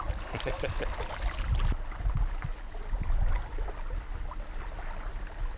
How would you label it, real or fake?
real